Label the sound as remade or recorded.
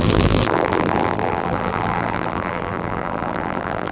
remade